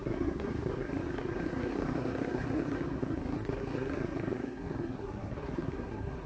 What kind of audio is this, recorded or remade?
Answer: remade